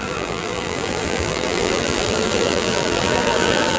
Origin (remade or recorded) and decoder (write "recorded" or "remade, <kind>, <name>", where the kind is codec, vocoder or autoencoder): remade, vocoder, BigVGAN v2